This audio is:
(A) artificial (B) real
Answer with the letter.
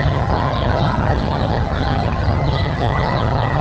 A